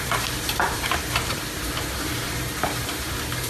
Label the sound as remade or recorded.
remade